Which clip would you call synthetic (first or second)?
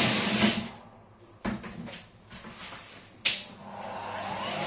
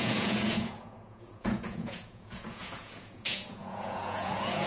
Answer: second